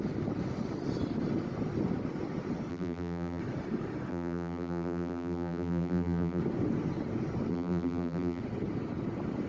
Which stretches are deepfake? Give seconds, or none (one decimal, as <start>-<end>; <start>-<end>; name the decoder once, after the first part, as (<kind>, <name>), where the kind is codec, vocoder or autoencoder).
2.7-3.4 (vocoder, BigVGAN v2); 4.1-6.4; 7.5-8.4